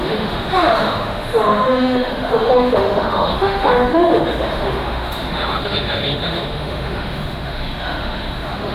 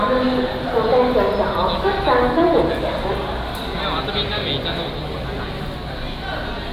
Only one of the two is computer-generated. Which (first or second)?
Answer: first